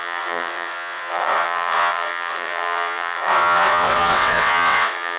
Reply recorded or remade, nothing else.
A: remade